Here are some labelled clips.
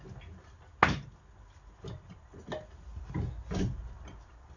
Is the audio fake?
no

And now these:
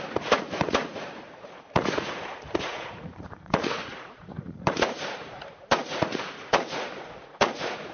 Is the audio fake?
yes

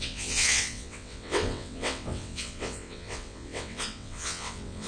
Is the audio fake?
yes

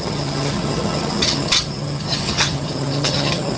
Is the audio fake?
yes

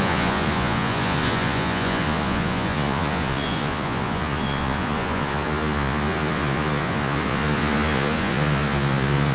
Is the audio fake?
yes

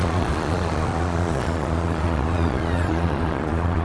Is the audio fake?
yes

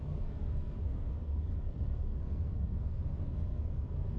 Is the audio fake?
yes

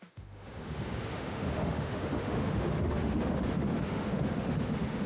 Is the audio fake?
yes